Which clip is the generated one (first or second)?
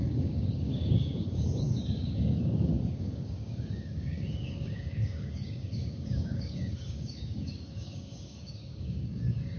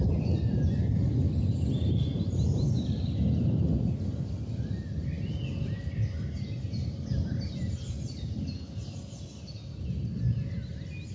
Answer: first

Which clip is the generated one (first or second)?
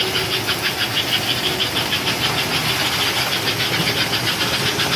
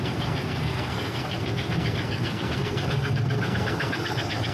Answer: second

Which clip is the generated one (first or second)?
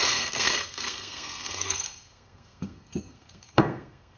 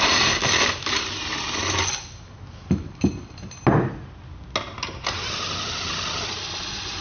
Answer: first